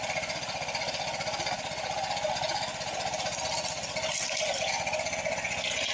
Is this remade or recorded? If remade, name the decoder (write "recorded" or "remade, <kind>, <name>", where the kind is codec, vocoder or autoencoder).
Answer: recorded